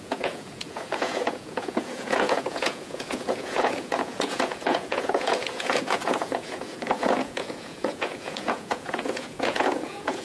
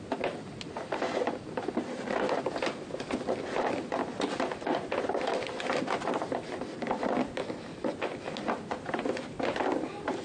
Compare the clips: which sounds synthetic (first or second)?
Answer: first